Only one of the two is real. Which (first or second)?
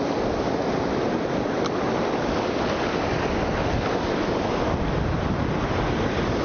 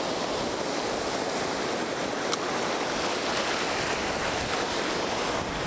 second